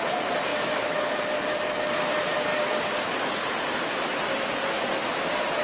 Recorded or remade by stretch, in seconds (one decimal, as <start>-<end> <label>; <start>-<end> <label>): 0.0-0.5 recorded; 0.5-1.2 remade; 1.2-5.6 recorded